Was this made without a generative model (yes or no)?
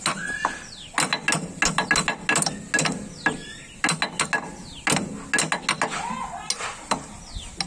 yes